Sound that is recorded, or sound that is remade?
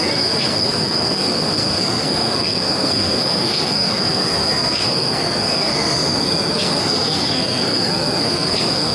remade